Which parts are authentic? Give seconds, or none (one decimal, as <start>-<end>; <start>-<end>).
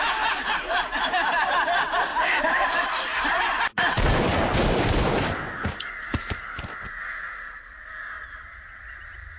2.1-2.7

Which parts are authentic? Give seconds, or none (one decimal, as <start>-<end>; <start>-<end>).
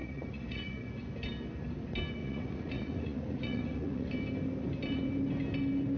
0.9-2.2; 4.1-6.0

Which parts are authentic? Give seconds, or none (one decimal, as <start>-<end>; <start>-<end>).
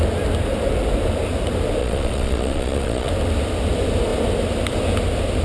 0.0-1.8; 3.1-5.4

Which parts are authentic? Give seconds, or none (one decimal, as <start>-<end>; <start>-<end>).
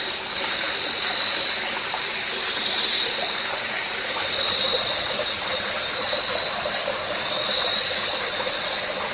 0.0-4.7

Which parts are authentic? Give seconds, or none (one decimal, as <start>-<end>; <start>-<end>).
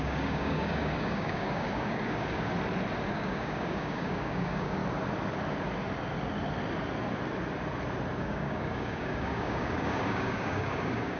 2.5-3.1; 4.8-8.2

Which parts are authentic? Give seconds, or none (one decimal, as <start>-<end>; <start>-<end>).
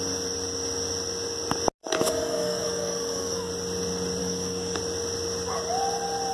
0.0-1.8; 3.5-4.2; 4.8-6.3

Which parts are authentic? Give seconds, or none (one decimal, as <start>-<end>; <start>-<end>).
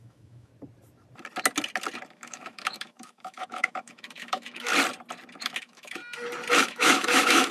0.5-2.1; 4.7-5.4; 6.0-6.6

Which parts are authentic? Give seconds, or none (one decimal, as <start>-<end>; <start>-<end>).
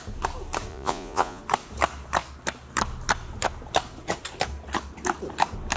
0.0-0.7; 1.4-5.8